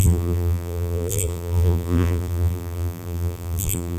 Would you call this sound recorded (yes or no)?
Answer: no